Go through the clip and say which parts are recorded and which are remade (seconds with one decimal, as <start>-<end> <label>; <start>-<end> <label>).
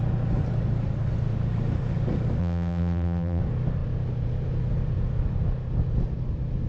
0.0-2.4 recorded; 2.4-3.4 remade; 3.4-6.7 recorded